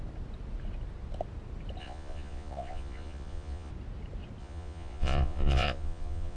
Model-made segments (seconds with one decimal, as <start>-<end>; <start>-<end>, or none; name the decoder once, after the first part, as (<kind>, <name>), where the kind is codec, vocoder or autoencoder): 1.8-3.7 (vocoder, Vocos); 4.4-6.4